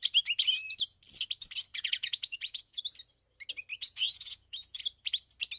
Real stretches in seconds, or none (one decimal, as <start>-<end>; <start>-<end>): 0.0-1.7; 2.8-3.7; 4.8-5.6